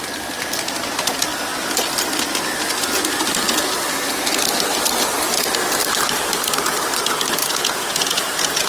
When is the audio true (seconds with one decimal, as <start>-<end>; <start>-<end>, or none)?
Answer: 0.0-7.4